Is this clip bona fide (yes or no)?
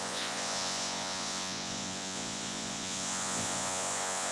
no